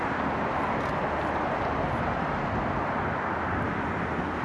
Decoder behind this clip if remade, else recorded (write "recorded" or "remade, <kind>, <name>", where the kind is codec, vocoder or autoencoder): recorded